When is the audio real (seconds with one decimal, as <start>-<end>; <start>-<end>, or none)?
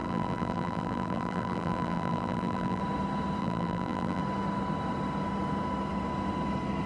2.8-3.4; 4.2-6.9